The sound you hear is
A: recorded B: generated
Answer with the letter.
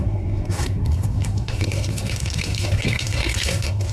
B